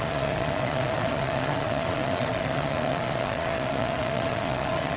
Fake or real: fake